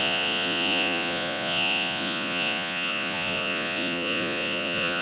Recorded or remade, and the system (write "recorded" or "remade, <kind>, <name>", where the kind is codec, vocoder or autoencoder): remade, vocoder, Vocos